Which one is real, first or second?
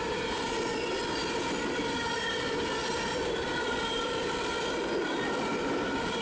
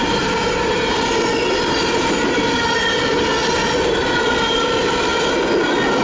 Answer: second